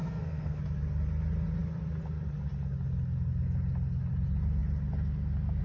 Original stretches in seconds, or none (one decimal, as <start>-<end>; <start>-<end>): 0.6-5.6